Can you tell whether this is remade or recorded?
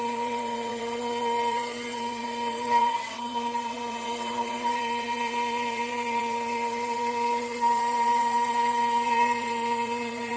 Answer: remade